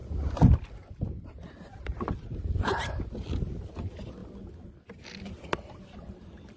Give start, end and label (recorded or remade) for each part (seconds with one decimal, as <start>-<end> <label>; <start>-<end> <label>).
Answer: 0.0-6.6 recorded